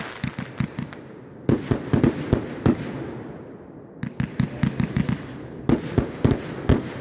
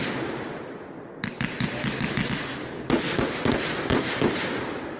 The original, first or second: first